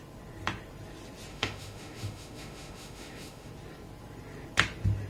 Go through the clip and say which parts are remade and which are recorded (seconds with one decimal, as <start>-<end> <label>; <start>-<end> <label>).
0.0-1.3 recorded; 1.3-3.5 remade; 3.5-5.1 recorded